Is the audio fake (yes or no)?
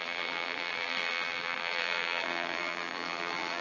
yes